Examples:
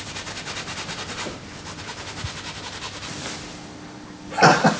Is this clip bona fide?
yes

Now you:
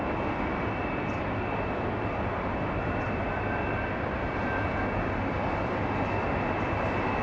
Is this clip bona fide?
yes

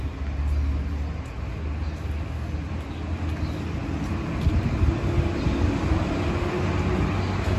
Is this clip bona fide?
yes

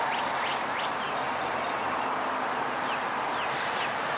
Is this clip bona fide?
yes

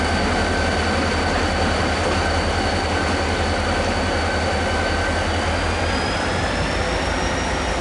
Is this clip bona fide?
yes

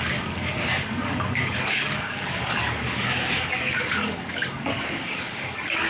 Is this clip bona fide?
no